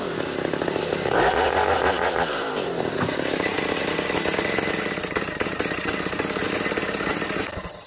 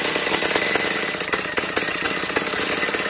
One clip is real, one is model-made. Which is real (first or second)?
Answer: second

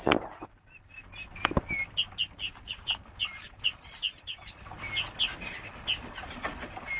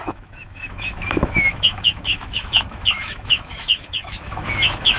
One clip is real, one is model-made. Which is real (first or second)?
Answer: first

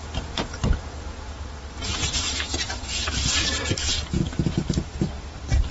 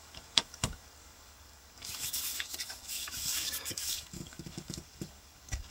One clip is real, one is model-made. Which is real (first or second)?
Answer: first